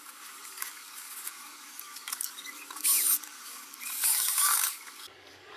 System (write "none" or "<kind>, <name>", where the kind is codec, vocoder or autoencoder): codec, DAC